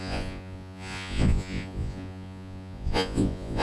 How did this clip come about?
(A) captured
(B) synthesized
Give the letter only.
B